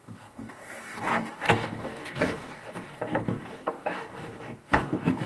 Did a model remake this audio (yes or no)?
yes